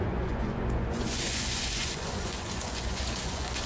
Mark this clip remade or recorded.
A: remade